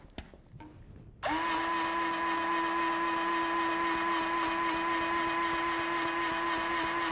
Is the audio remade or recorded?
recorded